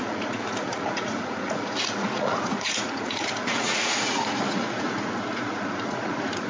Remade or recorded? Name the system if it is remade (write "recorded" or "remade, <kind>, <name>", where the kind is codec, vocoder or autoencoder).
remade, vocoder, Vocos